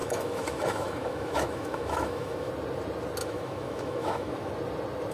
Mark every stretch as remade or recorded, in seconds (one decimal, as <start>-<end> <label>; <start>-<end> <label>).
0.0-2.5 remade; 2.5-3.2 recorded; 3.2-4.5 remade; 4.5-5.1 recorded